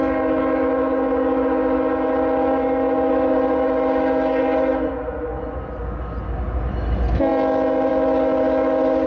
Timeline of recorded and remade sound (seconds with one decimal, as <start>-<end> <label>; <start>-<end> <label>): 0.0-9.1 recorded